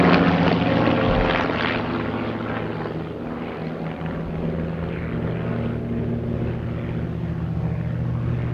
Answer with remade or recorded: recorded